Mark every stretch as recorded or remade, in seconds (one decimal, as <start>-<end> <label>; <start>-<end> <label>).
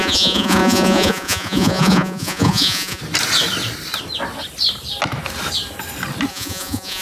0.0-3.0 remade; 3.0-6.3 recorded; 6.3-7.0 remade